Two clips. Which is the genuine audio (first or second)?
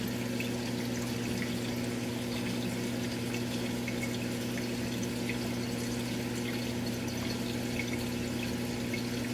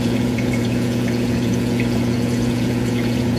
first